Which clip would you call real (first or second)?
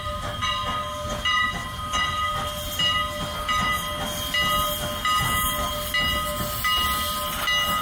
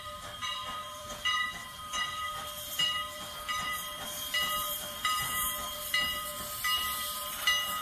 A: first